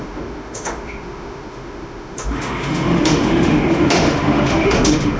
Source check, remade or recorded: remade